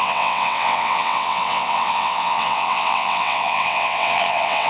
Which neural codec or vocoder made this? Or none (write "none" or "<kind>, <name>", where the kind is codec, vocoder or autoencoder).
vocoder, WaveNeXt